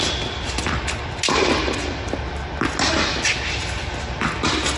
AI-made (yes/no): no